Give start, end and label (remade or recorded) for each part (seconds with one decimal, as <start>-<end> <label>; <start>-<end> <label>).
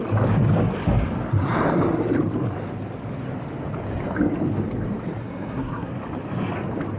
0.0-5.2 recorded; 5.2-5.9 remade; 5.9-7.0 recorded